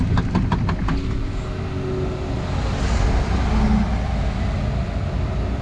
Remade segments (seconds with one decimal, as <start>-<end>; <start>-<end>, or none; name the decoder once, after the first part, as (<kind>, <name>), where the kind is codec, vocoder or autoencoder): none